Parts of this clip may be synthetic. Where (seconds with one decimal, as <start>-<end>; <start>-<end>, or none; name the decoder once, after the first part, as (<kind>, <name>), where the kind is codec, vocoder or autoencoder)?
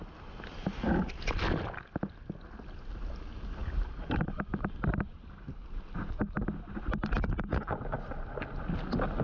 none